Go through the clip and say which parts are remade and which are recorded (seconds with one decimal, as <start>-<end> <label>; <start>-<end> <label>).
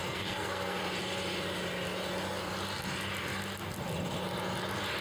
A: 0.0-0.8 remade; 0.8-5.0 recorded